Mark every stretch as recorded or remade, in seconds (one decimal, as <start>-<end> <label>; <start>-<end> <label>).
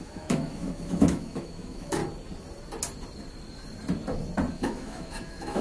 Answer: 0.0-2.0 remade; 2.0-4.5 recorded; 4.5-5.6 remade